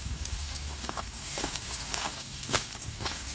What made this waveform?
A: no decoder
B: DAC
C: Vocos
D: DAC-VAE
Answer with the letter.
B